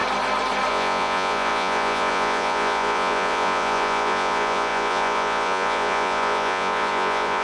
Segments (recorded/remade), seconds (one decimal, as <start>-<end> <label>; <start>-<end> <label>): 0.0-0.7 recorded; 0.7-7.4 remade